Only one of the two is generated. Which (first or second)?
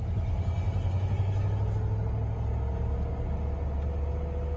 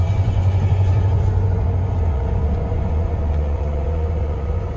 second